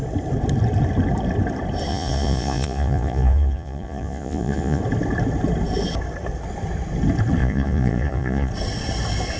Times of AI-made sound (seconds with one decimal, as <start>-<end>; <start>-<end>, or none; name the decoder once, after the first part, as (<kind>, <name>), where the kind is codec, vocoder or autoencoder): 1.9-4.8 (vocoder, Vocos); 7.4-8.5